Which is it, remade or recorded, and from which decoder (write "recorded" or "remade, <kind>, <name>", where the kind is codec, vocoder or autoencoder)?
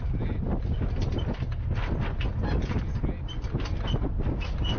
recorded